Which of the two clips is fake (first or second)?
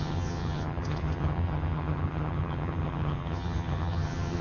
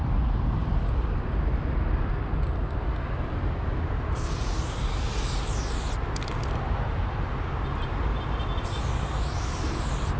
first